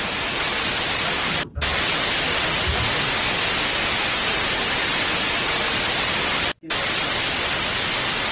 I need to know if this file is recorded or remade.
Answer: recorded